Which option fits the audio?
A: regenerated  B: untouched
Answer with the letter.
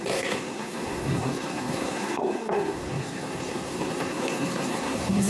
A